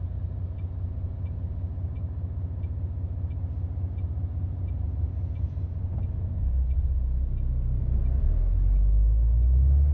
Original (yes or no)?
yes